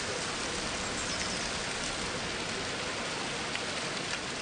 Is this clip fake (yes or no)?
no